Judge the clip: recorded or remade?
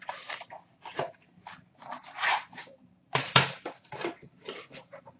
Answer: remade